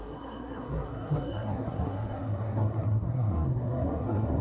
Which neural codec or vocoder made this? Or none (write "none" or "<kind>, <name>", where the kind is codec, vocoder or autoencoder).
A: codec, SNAC